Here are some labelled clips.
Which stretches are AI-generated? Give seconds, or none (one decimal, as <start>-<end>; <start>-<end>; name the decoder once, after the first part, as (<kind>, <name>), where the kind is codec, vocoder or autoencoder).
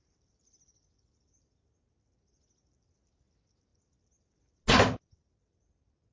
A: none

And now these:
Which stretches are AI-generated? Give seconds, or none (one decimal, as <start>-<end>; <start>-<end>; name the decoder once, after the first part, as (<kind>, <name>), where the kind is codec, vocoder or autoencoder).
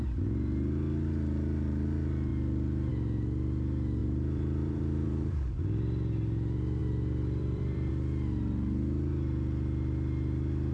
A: 2.3-2.9 (vocoder, BigVGAN v2); 4.0-5.5; 6.8-7.9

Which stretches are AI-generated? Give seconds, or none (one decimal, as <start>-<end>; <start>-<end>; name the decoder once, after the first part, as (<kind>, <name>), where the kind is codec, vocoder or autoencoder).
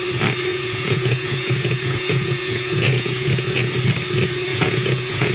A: 0.5-3.7 (vocoder, Vocos); 4.5-5.3